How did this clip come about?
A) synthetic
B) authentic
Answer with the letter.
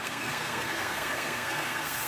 A